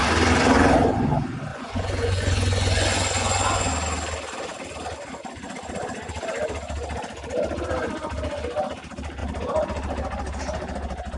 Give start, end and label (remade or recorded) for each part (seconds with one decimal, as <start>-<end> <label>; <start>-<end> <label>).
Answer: 0.0-1.5 recorded; 1.5-3.7 remade; 3.7-11.2 recorded